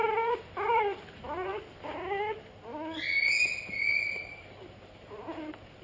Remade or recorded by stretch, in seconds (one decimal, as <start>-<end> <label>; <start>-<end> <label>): 0.0-1.5 remade; 1.5-3.7 recorded; 3.7-5.8 remade